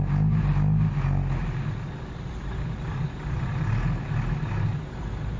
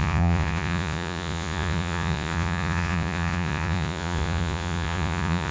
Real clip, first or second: first